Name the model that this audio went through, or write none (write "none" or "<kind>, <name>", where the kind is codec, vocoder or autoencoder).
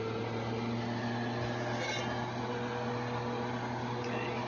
none